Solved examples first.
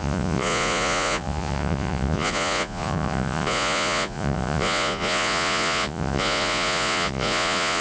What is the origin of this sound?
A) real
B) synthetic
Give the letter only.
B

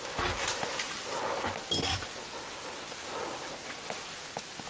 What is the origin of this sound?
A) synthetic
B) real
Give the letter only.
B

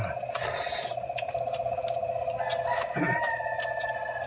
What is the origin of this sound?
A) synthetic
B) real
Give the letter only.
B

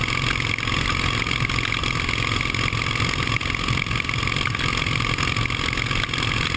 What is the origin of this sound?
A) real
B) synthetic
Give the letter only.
A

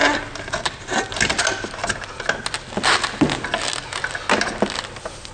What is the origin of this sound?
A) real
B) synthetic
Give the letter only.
A